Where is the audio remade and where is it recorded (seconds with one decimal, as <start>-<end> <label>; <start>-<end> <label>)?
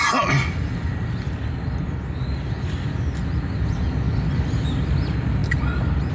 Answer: 0.0-6.1 recorded